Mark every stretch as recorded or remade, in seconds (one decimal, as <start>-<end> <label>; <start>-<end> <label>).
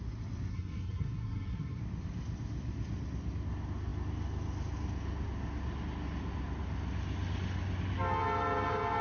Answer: 0.0-0.5 recorded; 0.5-1.8 remade; 1.8-9.0 recorded